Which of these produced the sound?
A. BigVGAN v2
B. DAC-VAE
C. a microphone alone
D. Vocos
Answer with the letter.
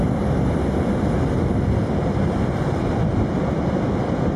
C